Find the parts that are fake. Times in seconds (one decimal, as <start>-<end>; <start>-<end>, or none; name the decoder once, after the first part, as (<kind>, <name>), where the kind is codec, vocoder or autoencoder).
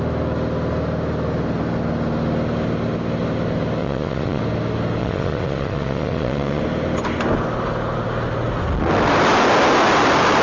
3.8-4.4 (vocoder, Vocos); 5.0-6.6